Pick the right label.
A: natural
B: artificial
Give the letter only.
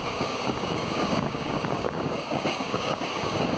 B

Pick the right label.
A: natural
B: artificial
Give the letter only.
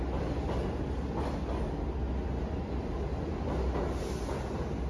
A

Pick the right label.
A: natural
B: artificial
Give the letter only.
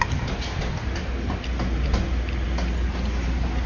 A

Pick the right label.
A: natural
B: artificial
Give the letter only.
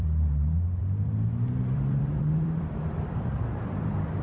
B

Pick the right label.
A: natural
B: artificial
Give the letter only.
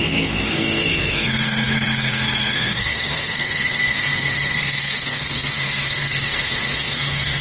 B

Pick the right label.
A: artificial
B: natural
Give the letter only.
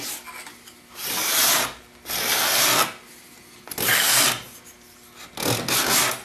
B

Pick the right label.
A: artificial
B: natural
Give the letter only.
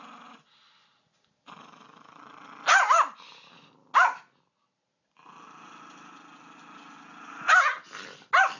B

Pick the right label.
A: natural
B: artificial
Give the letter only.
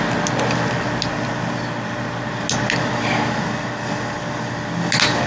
A